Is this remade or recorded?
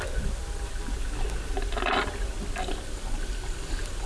recorded